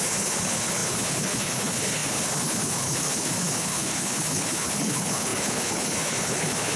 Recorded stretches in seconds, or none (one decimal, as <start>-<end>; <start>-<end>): none